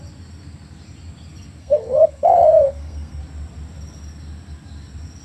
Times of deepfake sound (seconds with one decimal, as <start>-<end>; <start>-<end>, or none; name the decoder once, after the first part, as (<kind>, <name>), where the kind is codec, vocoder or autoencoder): 1.6-3.2 (codec, SNAC)